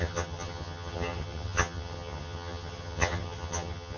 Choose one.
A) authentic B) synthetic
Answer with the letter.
B